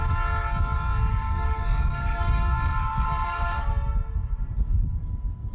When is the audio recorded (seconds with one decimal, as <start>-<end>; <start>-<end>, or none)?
0.0-1.1; 3.7-5.5